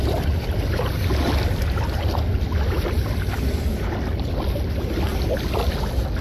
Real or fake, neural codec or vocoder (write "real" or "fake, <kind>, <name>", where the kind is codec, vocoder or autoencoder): real